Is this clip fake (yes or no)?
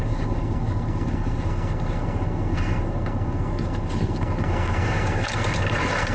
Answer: yes